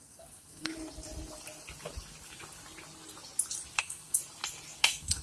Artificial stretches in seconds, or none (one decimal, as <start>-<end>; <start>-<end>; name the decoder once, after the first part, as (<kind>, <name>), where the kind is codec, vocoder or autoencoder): 0.0-0.7 (codec, SNAC); 3.8-4.2; 4.8-5.2

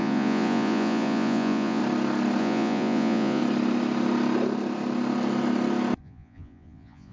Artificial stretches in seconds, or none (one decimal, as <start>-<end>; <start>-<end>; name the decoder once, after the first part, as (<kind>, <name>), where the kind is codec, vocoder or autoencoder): 0.0-1.8 (vocoder, Vocos); 2.4-3.4; 6.0-7.1

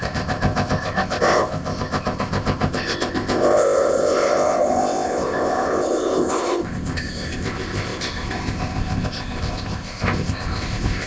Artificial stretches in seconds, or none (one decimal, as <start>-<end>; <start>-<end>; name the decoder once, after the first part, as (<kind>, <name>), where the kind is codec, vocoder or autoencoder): 0.0-11.1 (codec, ZipCodec)

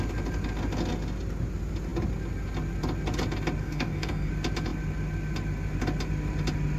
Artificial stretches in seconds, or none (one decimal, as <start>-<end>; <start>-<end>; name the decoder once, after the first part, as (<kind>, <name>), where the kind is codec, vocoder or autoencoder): 3.6-4.3 (codec, DAC)

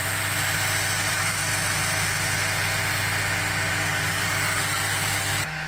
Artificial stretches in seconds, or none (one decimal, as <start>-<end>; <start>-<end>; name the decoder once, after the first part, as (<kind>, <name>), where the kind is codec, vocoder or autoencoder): 1.1-1.5 (codec, DAC); 3.7-5.7

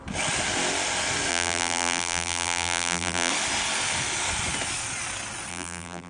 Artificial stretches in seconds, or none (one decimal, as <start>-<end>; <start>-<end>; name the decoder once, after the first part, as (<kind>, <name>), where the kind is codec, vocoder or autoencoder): 1.3-3.3 (vocoder, BigVGAN v2); 5.5-6.1

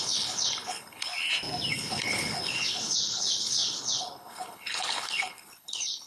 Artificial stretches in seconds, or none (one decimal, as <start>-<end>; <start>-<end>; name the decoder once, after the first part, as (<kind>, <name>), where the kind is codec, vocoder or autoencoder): 0.0-1.1 (codec, HILCodec); 1.7-6.1